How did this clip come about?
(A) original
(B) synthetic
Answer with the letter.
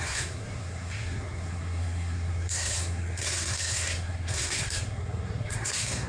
B